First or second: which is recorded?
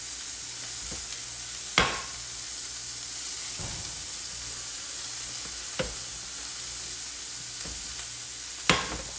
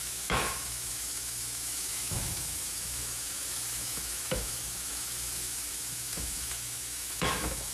first